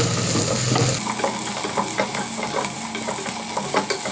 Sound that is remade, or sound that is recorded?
recorded